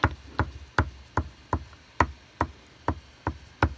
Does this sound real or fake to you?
real